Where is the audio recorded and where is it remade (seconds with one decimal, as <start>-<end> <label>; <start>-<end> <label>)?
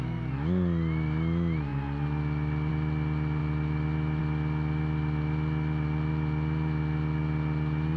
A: 0.0-8.0 recorded